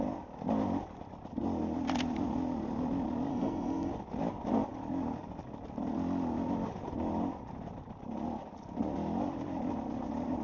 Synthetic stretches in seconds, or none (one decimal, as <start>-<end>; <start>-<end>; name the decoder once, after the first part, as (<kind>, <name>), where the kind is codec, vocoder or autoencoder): 3.3-3.9 (codec, SNAC)